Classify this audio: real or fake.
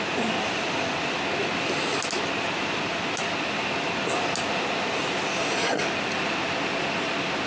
real